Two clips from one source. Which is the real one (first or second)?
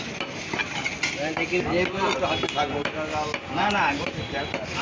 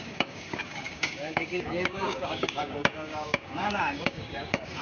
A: first